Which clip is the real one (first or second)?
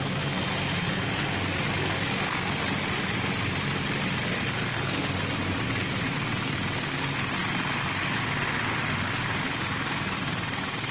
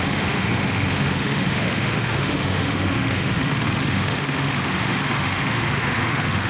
first